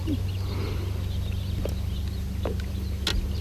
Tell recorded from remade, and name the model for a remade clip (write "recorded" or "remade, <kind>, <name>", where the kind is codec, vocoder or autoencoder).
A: recorded